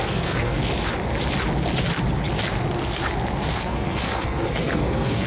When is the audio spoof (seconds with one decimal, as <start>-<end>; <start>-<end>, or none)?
0.0-0.6; 3.6-5.3

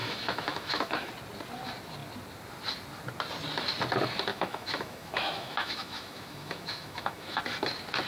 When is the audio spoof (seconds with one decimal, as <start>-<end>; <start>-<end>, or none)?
0.0-1.1; 4.3-7.4

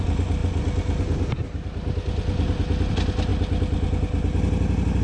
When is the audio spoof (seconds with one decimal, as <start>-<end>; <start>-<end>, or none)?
none

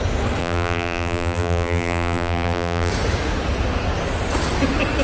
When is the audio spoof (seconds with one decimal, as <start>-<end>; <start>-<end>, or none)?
0.4-2.9

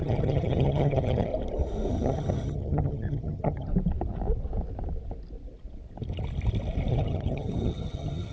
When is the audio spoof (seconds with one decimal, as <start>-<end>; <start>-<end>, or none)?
0.0-1.3; 1.9-3.7; 6.9-8.3